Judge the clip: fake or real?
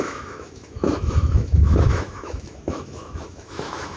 fake